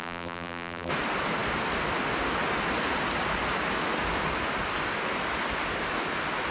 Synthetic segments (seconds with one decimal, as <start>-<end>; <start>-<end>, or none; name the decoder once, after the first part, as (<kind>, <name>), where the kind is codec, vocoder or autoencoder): 0.0-0.9 (vocoder, BigVGAN v2)

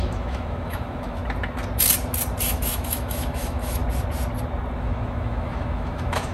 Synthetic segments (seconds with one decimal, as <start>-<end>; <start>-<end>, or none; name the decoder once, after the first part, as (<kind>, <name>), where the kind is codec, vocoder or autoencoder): 0.0-1.2 (autoencoder, DAC-VAE); 2.5-3.8; 4.8-6.3

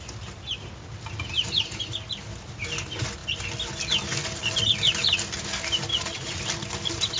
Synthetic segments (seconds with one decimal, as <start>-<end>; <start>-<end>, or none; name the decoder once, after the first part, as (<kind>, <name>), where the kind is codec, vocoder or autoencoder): 5.9-6.4 (vocoder, Vocos)

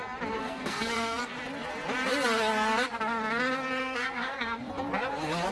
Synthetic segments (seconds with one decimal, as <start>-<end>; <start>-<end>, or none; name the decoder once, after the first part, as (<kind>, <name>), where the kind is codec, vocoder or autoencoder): 0.4-1.3 (codec, SNAC); 3.8-4.7

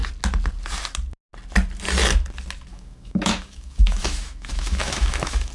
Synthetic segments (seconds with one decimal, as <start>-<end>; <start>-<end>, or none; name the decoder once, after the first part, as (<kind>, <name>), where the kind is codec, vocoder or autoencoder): 2.7-5.5 (autoencoder, DAC-VAE)

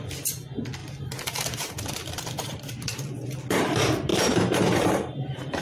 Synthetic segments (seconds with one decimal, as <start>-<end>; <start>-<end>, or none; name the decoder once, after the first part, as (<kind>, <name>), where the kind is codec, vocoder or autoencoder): 0.8-3.4 (vocoder, BigVGAN v2); 4.1-5.6

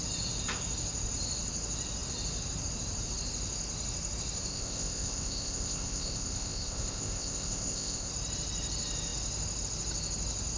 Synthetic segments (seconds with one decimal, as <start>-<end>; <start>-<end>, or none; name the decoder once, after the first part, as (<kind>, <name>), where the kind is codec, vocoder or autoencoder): 4.5-8.1 (codec, ZipCodec)

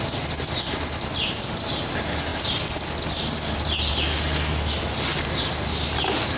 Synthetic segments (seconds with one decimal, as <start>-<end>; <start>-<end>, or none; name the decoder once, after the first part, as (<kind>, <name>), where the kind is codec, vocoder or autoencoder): none